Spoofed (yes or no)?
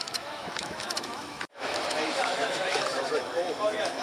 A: yes